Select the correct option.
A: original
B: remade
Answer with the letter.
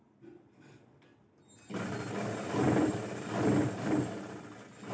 A